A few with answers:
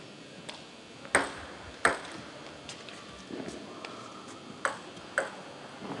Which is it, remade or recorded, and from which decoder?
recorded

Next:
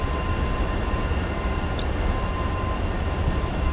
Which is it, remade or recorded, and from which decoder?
recorded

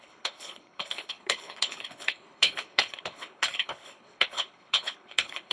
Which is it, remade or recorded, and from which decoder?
remade, codec, HILCodec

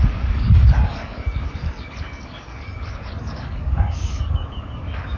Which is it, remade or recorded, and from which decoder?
remade, codec, DAC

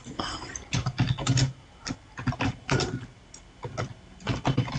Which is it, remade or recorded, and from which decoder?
recorded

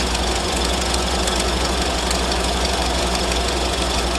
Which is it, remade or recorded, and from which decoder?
remade, vocoder, Vocos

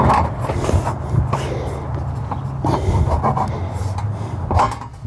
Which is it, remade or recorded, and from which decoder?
recorded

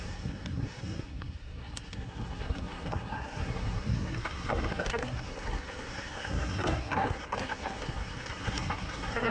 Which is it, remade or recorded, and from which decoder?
remade, codec, SNAC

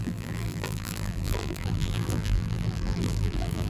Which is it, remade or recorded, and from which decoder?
remade, vocoder, BigVGAN v2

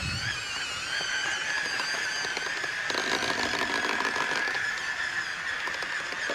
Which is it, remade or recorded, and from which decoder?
recorded